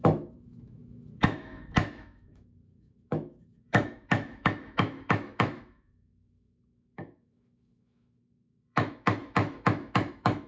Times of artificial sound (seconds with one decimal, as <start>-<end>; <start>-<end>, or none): 0.0-10.5